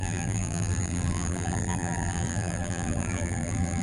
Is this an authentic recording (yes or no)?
no